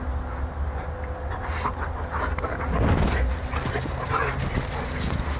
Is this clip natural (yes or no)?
yes